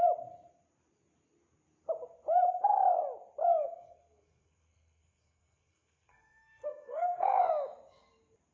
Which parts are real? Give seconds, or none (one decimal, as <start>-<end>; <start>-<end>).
0.0-3.5; 7.4-8.5